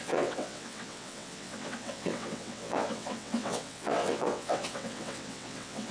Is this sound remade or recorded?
remade